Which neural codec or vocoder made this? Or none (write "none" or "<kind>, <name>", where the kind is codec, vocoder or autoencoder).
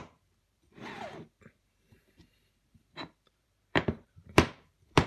vocoder, BigVGAN v2